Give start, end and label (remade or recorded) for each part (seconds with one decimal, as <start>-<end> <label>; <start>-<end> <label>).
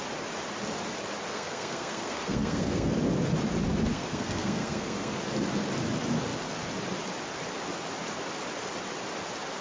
0.0-1.3 recorded; 1.3-2.9 remade; 2.9-3.9 recorded; 3.9-5.2 remade; 5.2-9.6 recorded